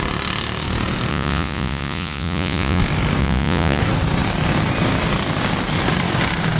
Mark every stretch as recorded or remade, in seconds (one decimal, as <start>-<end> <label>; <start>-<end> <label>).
0.0-1.1 recorded; 1.1-2.8 remade; 2.8-3.2 recorded; 3.2-3.8 remade; 3.8-6.6 recorded